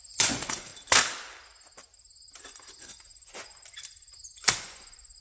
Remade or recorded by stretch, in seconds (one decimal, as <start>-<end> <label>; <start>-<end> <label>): 0.0-0.7 remade; 0.7-2.8 recorded; 2.8-3.5 remade; 3.5-4.4 recorded; 4.4-5.2 remade